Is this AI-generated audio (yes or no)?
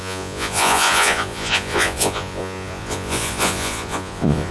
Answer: yes